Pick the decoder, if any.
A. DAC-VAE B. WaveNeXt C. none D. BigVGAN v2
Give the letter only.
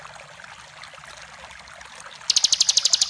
C